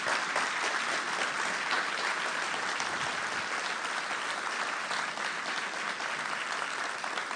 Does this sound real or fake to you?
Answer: real